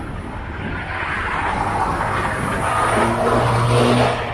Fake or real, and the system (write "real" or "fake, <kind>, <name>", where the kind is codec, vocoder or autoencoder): real